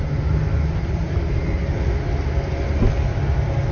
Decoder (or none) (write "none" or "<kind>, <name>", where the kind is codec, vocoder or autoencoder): none